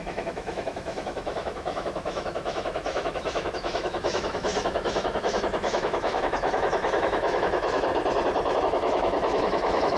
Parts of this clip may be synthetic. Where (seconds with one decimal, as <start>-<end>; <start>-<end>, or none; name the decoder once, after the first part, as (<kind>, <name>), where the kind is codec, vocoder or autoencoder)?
0.0-7.9 (autoencoder, DAC-VAE); 8.6-10.0